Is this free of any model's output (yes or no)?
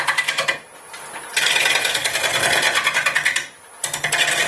yes